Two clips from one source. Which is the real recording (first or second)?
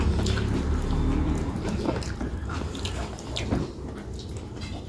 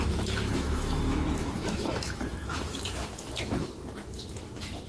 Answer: first